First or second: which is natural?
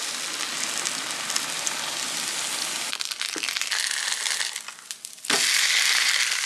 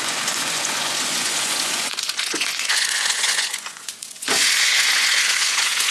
first